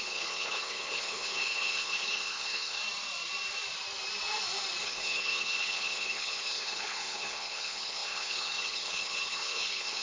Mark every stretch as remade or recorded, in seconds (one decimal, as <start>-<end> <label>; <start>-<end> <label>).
0.0-2.8 remade; 2.8-4.8 recorded; 4.8-10.0 remade